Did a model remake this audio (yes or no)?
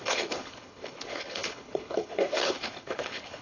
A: yes